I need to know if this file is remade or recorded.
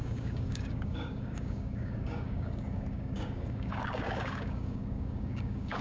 remade